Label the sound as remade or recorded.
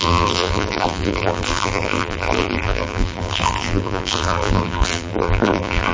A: remade